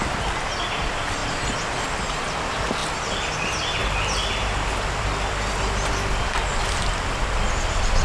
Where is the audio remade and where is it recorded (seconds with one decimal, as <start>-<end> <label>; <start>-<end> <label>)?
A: 0.0-8.0 recorded